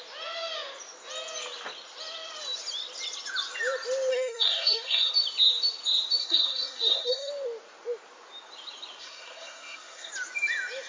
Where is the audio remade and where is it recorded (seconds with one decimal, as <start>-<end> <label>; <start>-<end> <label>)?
0.0-4.1 recorded; 4.1-5.1 remade; 5.1-6.2 recorded; 6.2-7.3 remade; 7.3-9.0 recorded; 9.0-10.1 remade; 10.1-10.9 recorded